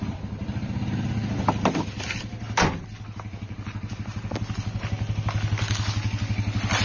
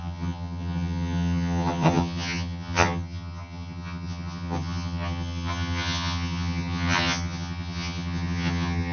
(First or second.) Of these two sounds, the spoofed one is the second